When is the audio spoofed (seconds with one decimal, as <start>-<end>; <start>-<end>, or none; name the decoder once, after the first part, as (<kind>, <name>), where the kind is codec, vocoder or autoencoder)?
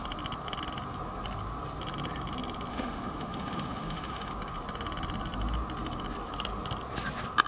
2.7-4.3 (autoencoder, DAC-VAE)